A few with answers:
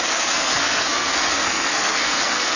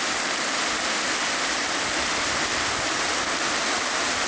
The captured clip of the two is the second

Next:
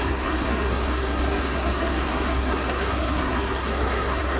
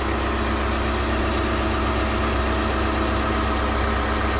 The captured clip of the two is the second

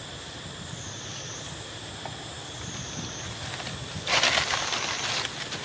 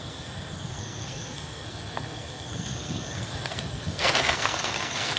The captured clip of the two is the first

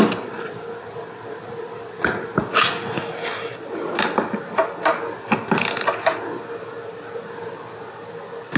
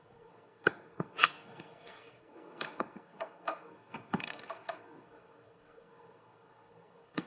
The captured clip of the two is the first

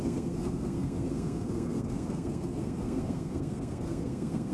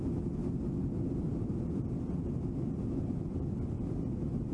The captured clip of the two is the second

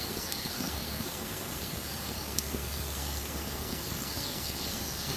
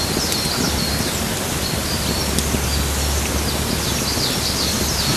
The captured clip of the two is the second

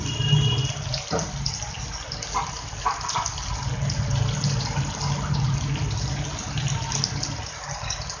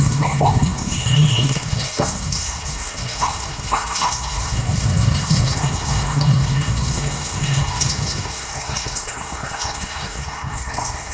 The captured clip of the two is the first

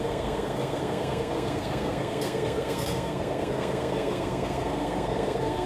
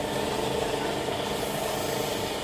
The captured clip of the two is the second